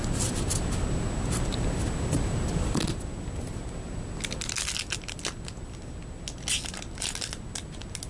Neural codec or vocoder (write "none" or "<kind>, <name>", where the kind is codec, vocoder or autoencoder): none